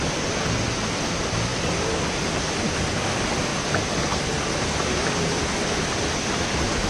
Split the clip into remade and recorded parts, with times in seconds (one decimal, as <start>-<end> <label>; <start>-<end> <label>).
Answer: 0.0-3.5 remade; 3.5-6.0 recorded; 6.0-6.9 remade